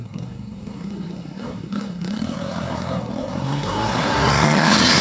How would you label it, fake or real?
fake